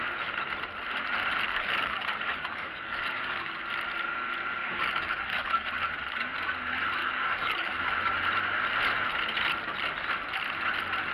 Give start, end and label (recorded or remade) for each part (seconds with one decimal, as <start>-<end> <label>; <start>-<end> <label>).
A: 0.0-1.5 recorded; 1.5-3.6 remade; 3.6-4.6 recorded; 4.6-5.7 remade; 5.7-7.0 recorded; 7.0-7.8 remade; 7.8-11.1 recorded